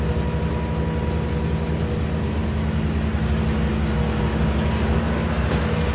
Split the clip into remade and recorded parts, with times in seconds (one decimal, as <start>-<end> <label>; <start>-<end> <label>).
0.0-5.9 recorded